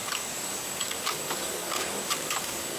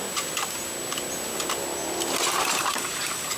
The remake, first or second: first